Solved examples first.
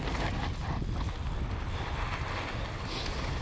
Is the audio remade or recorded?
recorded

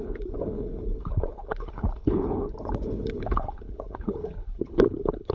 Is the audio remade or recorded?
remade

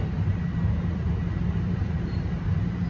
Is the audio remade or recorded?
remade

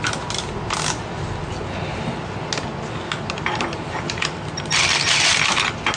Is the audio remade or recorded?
recorded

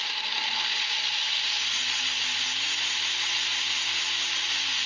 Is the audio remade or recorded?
recorded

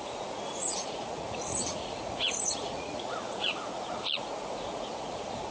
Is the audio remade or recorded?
remade